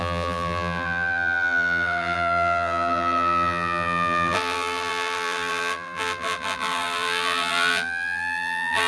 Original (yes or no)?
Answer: no